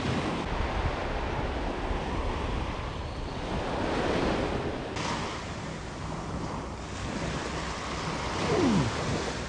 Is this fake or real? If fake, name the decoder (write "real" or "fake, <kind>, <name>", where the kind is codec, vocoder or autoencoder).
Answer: real